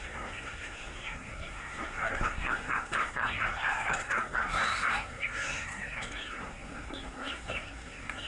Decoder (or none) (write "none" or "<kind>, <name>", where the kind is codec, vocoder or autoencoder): codec, SNAC